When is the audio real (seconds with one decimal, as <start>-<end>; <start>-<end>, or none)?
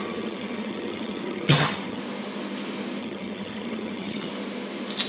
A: 2.0-3.0; 4.3-5.1